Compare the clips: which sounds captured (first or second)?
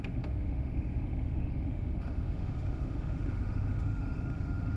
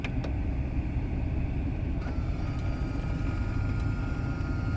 second